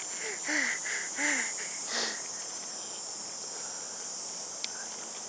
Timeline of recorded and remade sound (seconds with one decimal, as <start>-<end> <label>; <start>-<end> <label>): 0.0-5.3 recorded